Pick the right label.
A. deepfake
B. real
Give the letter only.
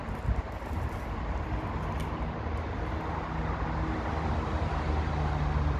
B